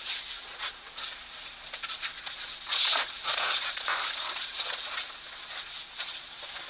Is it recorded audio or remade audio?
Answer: remade